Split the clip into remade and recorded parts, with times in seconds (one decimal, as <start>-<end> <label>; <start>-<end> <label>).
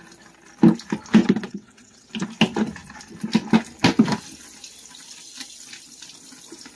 0.0-1.2 recorded; 1.2-2.1 remade; 2.1-6.8 recorded